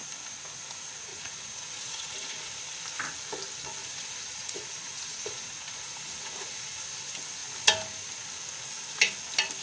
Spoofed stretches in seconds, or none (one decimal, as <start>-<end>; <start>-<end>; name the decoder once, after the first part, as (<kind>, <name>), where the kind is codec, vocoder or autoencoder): 1.1-2.6 (vocoder, Vocos); 3.8-6.8